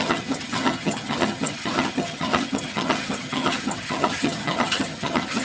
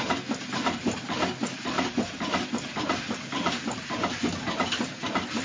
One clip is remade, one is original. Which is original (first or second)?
second